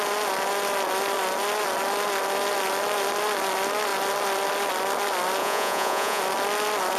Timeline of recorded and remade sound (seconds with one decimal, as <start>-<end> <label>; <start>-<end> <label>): 0.0-5.4 recorded; 5.4-6.2 remade; 6.2-7.0 recorded